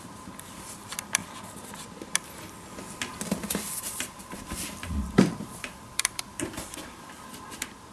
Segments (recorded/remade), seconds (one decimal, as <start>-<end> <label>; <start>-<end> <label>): 0.0-1.2 remade; 1.2-3.6 recorded; 3.6-7.9 remade